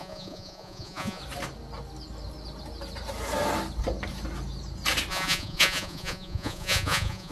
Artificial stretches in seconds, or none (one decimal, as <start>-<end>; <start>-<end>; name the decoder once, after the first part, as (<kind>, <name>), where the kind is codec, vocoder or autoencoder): 0.0-1.2 (vocoder, Vocos); 5.1-7.3